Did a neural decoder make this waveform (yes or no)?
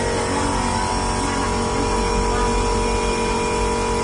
no